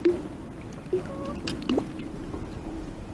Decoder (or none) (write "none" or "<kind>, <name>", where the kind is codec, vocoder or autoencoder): none